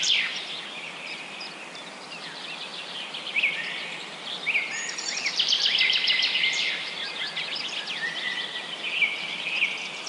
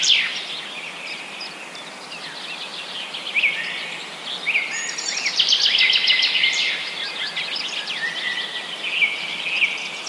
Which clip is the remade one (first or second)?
first